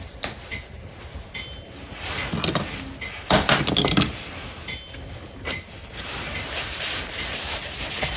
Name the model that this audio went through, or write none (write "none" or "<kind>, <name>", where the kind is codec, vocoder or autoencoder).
none